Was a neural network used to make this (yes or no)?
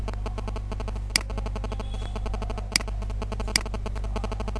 no